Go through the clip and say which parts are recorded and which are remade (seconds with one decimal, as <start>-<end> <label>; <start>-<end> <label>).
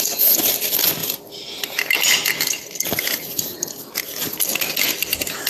0.0-5.5 recorded